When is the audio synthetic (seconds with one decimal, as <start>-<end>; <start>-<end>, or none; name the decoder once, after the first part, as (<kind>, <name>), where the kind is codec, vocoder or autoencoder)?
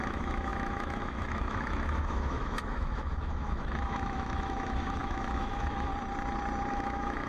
0.0-5.9 (autoencoder, DAC-VAE); 6.7-7.3